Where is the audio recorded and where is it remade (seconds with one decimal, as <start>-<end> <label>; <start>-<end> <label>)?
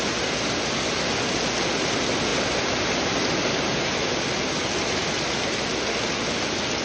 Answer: 0.0-6.8 recorded